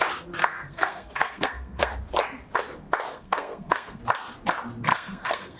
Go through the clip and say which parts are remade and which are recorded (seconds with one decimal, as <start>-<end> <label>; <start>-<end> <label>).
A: 0.0-0.4 recorded; 0.4-1.9 remade; 1.9-3.1 recorded; 3.1-4.0 remade; 4.0-4.9 recorded; 4.9-5.6 remade